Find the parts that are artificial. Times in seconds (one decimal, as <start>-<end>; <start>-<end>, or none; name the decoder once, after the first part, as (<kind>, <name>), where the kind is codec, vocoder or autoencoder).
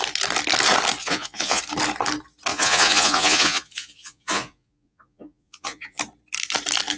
1.0-1.6 (vocoder, Vocos); 2.5-6.0